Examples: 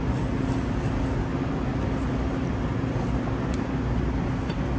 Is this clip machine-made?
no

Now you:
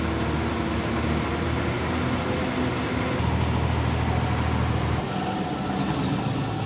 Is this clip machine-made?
no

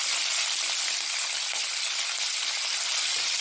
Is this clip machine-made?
no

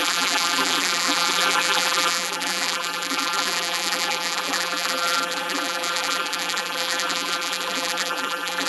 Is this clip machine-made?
yes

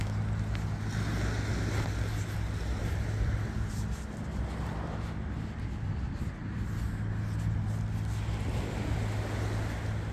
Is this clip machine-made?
no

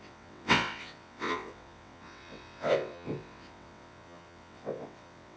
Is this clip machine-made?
yes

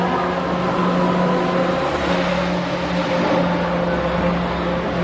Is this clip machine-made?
no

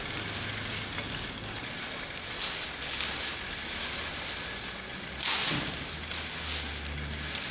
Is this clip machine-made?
no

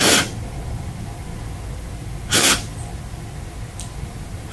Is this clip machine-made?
no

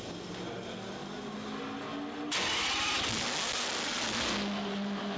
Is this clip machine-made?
no